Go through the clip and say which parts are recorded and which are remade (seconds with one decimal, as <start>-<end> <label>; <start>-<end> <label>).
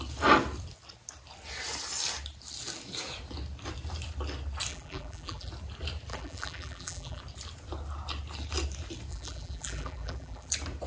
0.0-4.7 recorded; 4.7-5.5 remade; 5.5-6.1 recorded; 6.1-7.2 remade; 7.2-9.1 recorded; 9.1-10.5 remade; 10.5-10.9 recorded